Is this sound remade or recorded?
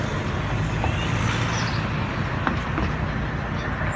recorded